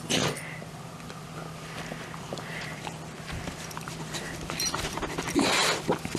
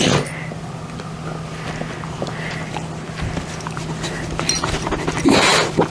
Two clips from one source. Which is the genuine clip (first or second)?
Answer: second